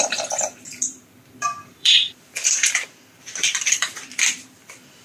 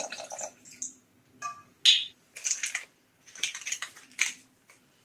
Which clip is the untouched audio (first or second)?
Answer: second